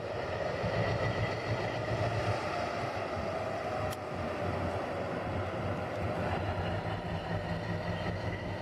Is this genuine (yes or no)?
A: yes